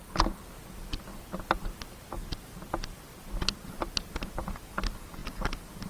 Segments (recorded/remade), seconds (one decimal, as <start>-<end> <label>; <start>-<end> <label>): 0.0-5.2 recorded; 5.2-5.9 remade